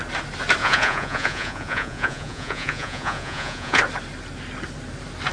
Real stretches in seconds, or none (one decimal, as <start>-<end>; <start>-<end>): 0.0-0.6; 3.8-5.3